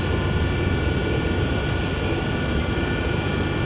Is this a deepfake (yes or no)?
no